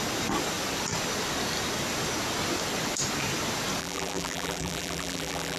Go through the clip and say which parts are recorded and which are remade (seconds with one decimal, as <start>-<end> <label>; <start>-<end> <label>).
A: 0.0-3.8 recorded; 3.8-5.6 remade